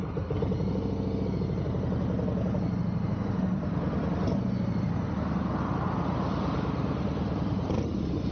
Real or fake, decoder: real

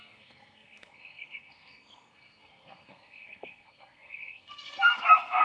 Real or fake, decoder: fake, codec, SNAC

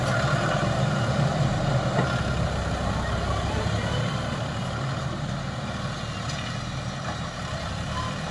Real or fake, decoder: real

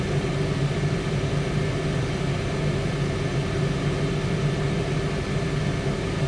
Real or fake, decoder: real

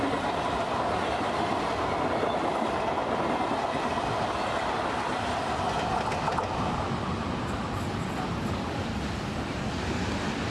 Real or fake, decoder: real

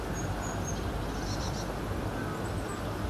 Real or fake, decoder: real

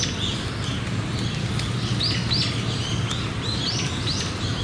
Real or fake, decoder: real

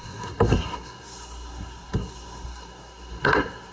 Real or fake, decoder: fake, codec, SNAC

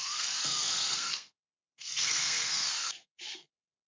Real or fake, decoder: fake, codec, SNAC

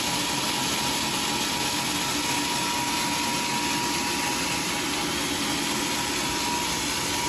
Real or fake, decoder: real